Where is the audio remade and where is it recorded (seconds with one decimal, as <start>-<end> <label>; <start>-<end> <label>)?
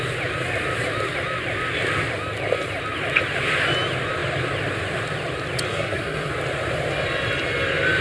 0.0-5.7 recorded; 5.7-6.3 remade; 6.3-8.0 recorded